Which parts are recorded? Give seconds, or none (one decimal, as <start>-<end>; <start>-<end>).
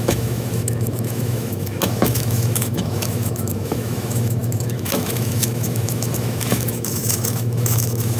none